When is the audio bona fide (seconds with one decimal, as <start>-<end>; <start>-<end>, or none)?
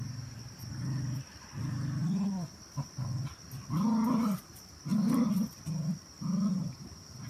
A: 0.0-2.0; 2.9-4.9; 5.6-7.3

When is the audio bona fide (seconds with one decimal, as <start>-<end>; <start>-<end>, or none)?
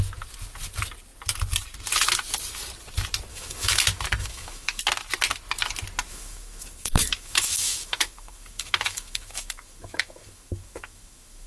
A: 0.0-3.3; 3.8-4.2; 4.8-6.1